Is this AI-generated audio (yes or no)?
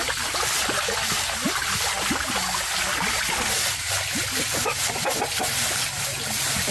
no